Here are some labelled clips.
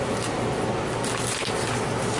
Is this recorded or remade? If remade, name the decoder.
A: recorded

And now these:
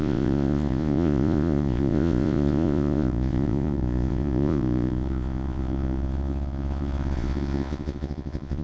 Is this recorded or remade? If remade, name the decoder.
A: remade, vocoder, Vocos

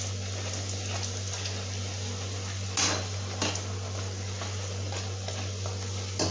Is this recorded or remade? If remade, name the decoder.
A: recorded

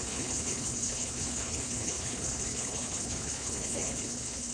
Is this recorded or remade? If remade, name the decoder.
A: remade, codec, HILCodec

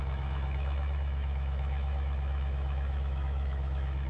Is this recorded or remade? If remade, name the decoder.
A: remade, autoencoder, DAC-VAE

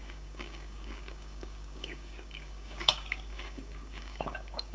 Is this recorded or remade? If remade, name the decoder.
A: remade, codec, DAC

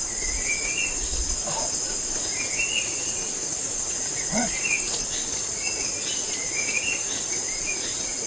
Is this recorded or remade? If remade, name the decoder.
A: remade, vocoder, Vocos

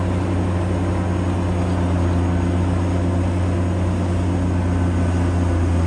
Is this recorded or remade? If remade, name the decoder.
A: recorded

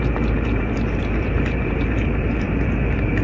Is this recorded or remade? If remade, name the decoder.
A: remade, vocoder, BigVGAN v2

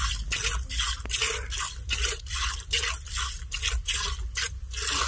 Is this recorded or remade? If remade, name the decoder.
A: recorded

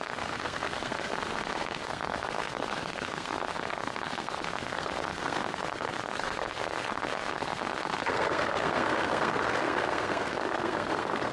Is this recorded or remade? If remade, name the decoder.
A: remade, codec, SNAC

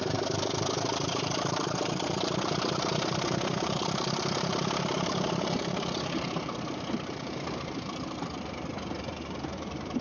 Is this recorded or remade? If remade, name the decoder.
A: remade, vocoder, BigVGAN v2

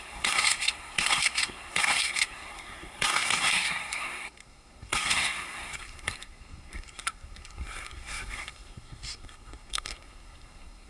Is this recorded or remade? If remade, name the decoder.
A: remade, codec, SNAC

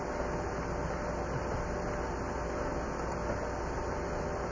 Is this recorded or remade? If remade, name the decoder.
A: recorded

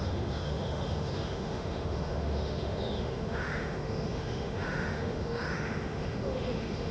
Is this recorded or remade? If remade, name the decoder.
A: remade, autoencoder, DAC-VAE